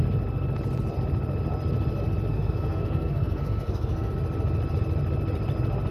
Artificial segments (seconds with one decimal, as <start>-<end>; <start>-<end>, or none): 2.3-4.1